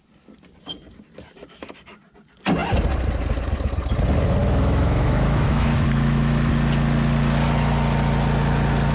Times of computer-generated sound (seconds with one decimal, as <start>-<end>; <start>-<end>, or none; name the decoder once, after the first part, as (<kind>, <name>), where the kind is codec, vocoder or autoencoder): 4.4-6.5 (autoencoder, DAC-VAE)